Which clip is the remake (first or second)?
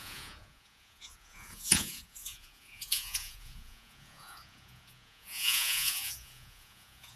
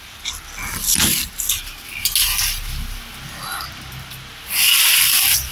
first